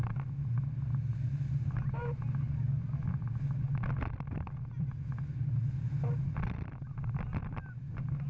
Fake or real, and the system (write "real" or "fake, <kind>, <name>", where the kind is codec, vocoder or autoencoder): real